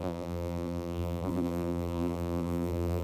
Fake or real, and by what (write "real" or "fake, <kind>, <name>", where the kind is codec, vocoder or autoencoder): fake, vocoder, BigVGAN v2